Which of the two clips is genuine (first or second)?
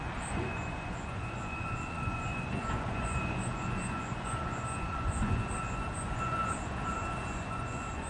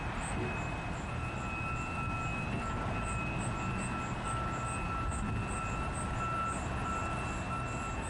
second